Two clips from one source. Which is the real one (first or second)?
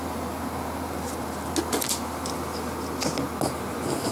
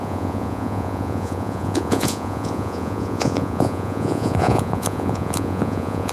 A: first